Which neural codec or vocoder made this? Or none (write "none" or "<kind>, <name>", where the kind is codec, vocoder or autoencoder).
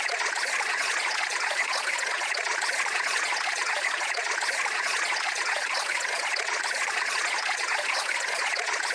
vocoder, Vocos